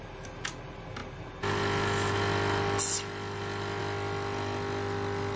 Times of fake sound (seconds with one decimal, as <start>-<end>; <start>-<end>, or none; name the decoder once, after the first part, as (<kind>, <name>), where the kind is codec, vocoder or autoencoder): none